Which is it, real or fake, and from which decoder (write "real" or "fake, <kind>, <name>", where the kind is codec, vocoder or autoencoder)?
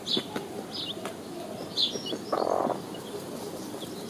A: real